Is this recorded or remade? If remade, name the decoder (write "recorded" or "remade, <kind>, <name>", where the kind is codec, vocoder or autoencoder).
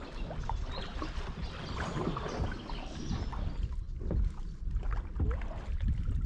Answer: recorded